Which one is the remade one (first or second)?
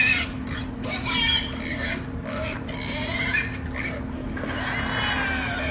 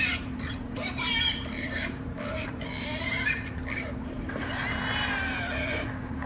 second